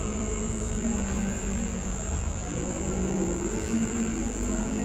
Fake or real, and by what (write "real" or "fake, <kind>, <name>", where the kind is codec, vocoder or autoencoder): fake, vocoder, BigVGAN v2